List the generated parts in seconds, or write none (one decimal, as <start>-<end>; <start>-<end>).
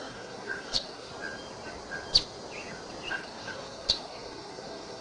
0.0-1.1; 3.1-5.0